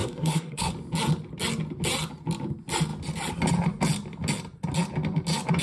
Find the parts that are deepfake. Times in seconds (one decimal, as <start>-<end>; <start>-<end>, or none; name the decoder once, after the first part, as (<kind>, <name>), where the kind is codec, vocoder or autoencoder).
0.0-0.7 (codec, SNAC)

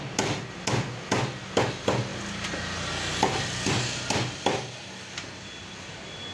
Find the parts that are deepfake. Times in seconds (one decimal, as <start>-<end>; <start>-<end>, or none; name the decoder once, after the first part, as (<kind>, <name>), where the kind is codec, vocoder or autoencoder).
none

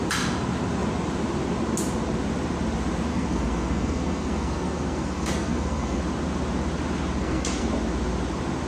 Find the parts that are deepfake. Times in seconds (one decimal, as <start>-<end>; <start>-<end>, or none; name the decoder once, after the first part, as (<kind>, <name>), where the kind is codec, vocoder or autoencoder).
3.1-6.0 (codec, SNAC); 7.2-7.7

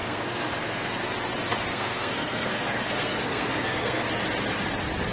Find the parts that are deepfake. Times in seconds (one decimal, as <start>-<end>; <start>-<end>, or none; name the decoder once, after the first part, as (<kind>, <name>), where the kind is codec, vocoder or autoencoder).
0.0-0.9 (codec, SNAC); 1.7-4.1

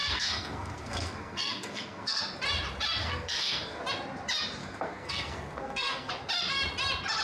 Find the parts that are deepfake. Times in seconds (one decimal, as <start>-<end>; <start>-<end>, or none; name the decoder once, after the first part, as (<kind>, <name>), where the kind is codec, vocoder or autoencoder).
0.0-2.2 (codec, SNAC); 3.0-3.8; 4.6-6.1

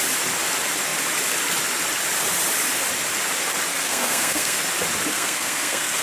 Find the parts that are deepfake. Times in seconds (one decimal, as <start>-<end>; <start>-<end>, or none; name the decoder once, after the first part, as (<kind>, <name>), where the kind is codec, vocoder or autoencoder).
3.7-4.6 (codec, SNAC); 5.1-6.0

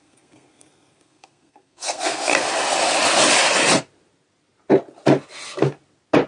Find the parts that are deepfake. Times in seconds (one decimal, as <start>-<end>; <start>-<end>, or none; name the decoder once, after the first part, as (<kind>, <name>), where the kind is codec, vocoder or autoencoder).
0.0-2.3 (codec, SNAC)

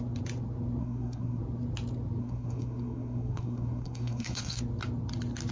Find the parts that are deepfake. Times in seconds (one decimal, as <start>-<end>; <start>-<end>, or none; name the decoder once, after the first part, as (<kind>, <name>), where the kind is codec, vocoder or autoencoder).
0.8-1.4 (codec, SNAC); 2.2-4.6